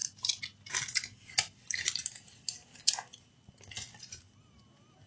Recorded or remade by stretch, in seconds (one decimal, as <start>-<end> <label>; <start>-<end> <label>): 0.0-5.1 recorded